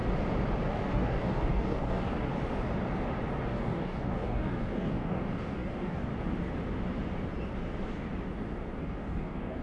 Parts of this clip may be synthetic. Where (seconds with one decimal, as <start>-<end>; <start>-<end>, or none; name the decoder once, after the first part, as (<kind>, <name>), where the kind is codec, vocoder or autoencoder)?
0.7-2.3 (codec, DAC); 3.4-6.1; 8.8-9.6